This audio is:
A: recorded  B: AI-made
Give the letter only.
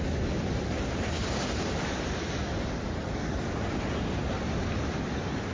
A